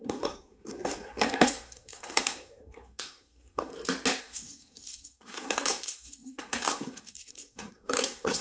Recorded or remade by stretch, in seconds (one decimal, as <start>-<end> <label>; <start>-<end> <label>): 0.0-3.7 remade; 3.7-4.2 recorded; 4.2-8.4 remade